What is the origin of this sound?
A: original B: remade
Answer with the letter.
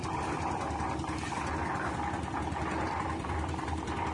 B